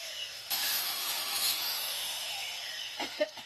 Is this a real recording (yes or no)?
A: no